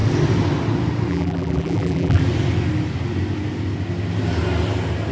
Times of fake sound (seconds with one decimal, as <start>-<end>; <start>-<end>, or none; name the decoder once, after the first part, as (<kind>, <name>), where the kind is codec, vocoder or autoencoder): 1.1-2.2 (vocoder, BigVGAN v2)